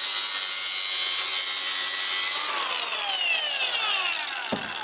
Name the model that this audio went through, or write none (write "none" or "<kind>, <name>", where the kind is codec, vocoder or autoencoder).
none